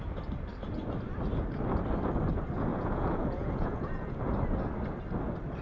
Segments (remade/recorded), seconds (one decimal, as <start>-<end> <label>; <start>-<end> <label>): 0.0-2.7 recorded; 2.7-4.2 remade; 4.2-5.6 recorded

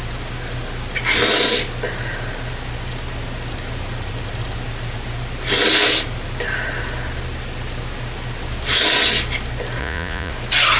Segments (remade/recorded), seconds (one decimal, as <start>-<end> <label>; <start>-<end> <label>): 0.0-9.8 recorded; 9.8-10.3 remade; 10.3-10.8 recorded

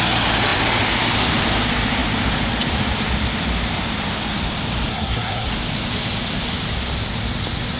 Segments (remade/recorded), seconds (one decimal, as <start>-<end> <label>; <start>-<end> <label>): 0.0-4.9 recorded; 4.9-5.5 remade; 5.5-7.8 recorded